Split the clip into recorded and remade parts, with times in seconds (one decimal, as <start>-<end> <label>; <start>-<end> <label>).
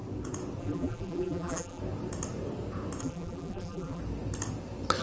0.0-0.6 recorded; 0.6-1.8 remade; 1.8-3.0 recorded; 3.0-4.0 remade; 4.0-5.0 recorded